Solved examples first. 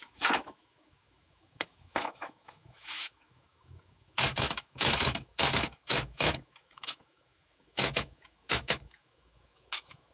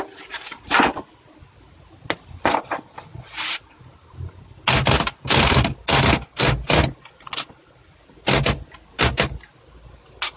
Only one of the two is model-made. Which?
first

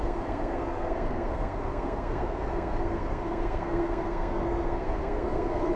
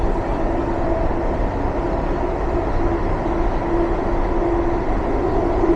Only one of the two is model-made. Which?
first